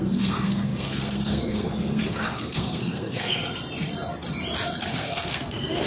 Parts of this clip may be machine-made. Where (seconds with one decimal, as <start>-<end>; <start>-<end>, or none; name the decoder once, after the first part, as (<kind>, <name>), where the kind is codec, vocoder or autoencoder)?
0.0-3.4 (codec, SNAC); 4.9-5.9